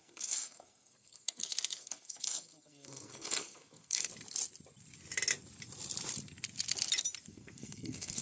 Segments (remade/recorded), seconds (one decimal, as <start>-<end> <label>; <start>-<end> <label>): 0.0-4.1 remade; 4.1-7.3 recorded; 7.3-8.2 remade